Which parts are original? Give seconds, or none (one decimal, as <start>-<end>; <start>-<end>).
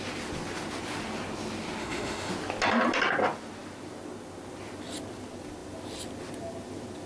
0.0-1.8; 2.3-7.1